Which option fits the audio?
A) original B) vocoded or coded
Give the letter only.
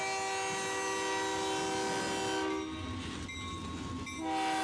A